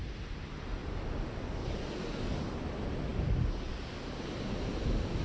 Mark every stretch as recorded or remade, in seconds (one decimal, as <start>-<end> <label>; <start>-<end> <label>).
0.0-3.1 recorded; 3.1-3.7 remade; 3.7-5.2 recorded